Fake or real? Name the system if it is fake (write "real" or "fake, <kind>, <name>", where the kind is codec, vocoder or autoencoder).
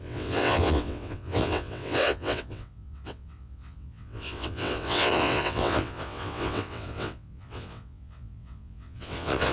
fake, vocoder, WaveNeXt